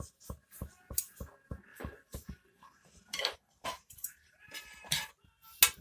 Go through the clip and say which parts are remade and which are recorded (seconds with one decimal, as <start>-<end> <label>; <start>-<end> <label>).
0.0-1.7 recorded; 1.7-5.1 remade; 5.1-5.8 recorded